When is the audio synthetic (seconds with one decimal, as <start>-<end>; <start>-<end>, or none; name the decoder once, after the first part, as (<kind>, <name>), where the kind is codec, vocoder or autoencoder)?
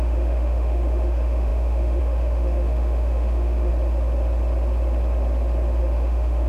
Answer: 0.0-3.7 (autoencoder, DAC-VAE); 5.8-6.5